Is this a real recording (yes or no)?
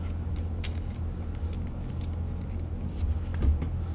yes